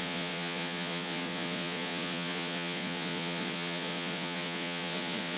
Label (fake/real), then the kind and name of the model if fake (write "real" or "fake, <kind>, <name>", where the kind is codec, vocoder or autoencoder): fake, vocoder, Vocos